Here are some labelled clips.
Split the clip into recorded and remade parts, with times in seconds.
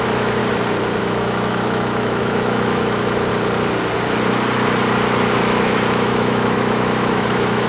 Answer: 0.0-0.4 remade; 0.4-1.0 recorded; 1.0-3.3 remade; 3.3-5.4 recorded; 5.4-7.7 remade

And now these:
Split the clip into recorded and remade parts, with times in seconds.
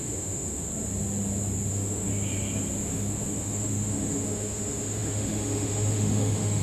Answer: 0.0-0.7 remade; 0.7-1.7 recorded; 1.7-2.1 remade; 2.1-2.9 recorded; 2.9-6.6 remade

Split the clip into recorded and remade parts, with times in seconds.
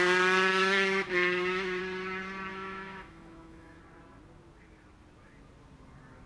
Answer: 0.0-0.5 recorded; 0.5-1.8 remade; 1.8-2.5 recorded; 2.5-3.8 remade; 3.8-6.3 recorded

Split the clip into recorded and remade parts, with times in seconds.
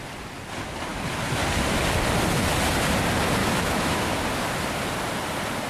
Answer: 0.0-3.4 recorded; 3.4-4.2 remade; 4.2-5.7 recorded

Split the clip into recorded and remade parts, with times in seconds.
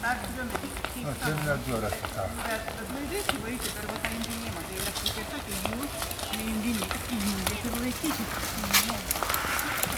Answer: 0.0-1.4 recorded; 1.4-2.0 remade; 2.0-10.0 recorded